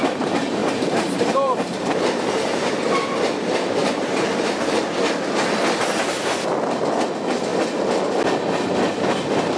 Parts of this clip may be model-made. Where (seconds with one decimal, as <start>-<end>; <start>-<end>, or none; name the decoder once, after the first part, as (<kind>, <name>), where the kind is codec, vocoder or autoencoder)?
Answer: 0.6-2.7 (vocoder, BigVGAN v2); 3.8-4.8